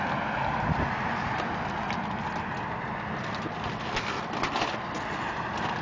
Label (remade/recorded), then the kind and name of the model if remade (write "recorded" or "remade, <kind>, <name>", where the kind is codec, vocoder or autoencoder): recorded